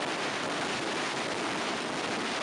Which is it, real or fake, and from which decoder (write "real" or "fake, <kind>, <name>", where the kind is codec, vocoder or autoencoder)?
real